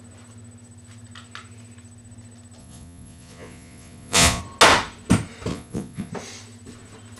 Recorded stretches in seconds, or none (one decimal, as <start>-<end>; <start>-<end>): 0.0-2.6; 4.4-5.5; 6.1-7.2